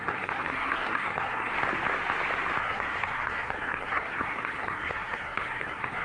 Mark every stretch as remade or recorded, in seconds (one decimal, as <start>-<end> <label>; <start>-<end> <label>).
0.0-1.5 remade; 1.5-2.6 recorded; 2.6-6.0 remade